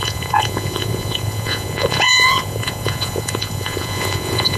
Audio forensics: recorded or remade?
remade